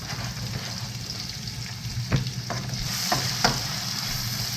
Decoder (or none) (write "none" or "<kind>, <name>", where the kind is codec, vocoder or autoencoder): none